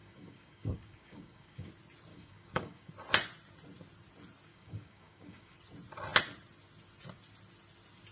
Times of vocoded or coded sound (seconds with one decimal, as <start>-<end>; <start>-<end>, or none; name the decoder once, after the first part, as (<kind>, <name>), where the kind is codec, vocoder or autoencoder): 0.0-1.7 (codec, DAC); 2.1-2.9; 4.5-5.6